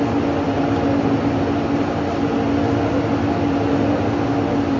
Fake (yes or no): no